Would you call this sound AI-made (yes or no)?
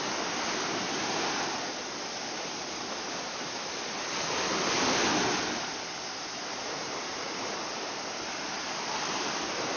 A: no